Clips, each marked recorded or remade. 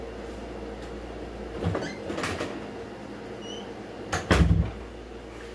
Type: recorded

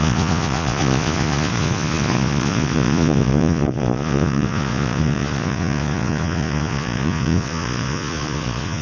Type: remade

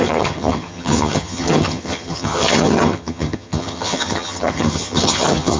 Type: remade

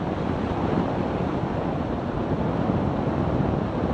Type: recorded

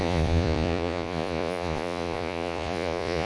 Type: remade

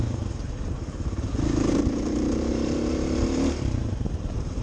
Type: remade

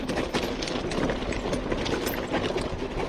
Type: recorded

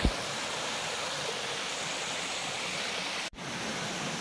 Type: recorded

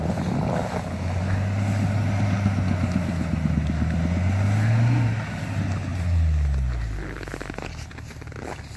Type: recorded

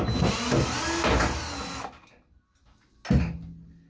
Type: recorded